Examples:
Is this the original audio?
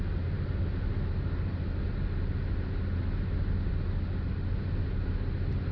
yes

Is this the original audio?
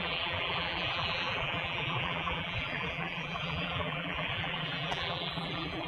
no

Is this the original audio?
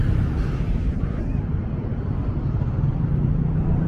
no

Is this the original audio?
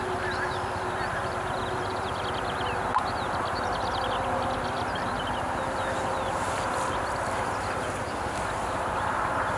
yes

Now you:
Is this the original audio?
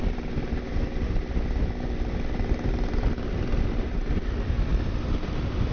yes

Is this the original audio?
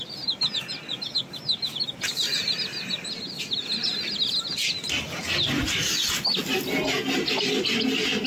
yes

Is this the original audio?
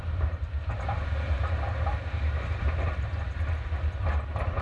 no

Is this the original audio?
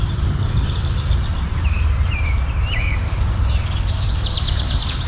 no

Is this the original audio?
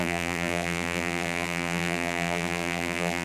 no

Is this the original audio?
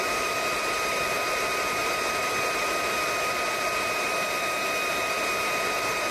no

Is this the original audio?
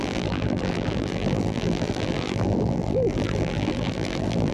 no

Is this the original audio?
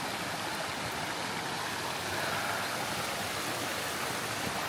yes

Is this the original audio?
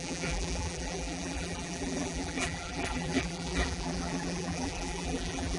no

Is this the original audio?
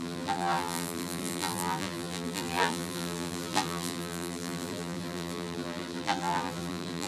no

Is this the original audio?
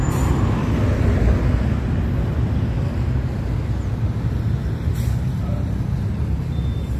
yes